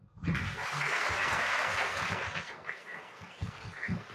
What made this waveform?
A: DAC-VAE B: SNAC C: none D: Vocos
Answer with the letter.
B